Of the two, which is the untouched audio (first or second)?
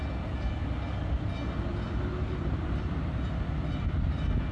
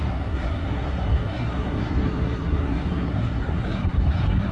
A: first